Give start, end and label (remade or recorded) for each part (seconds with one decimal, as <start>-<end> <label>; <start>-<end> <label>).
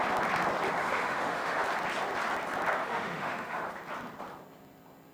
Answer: 0.0-0.8 recorded; 0.8-1.6 remade; 1.6-2.8 recorded; 2.8-3.7 remade; 3.7-5.1 recorded